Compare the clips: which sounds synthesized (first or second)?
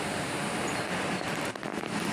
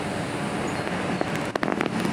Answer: first